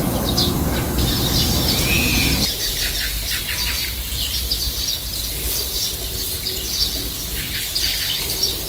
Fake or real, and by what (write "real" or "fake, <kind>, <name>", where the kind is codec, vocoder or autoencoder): real